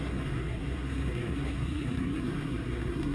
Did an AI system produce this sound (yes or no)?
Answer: yes